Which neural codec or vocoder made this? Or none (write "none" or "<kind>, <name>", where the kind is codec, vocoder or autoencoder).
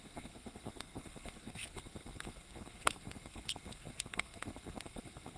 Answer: codec, SNAC